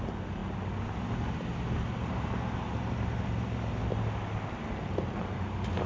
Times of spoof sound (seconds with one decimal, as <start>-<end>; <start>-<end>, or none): none